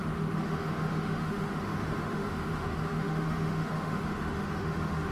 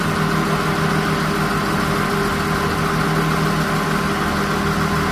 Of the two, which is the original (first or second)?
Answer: second